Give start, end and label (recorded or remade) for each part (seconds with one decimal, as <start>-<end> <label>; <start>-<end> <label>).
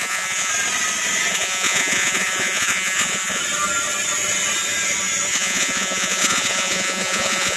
0.0-0.5 remade; 0.5-1.3 recorded; 1.3-3.4 remade; 3.4-5.3 recorded; 5.3-7.6 remade